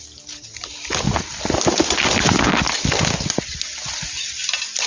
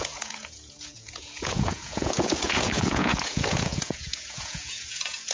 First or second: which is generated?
second